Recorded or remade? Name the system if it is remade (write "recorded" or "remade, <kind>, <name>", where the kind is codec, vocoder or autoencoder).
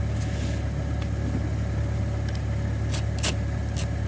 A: recorded